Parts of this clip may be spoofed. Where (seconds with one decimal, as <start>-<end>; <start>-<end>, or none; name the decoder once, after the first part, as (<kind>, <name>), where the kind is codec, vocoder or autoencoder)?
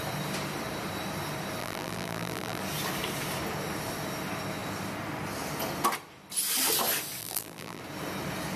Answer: 1.6-2.6 (vocoder, BigVGAN v2); 7.2-7.8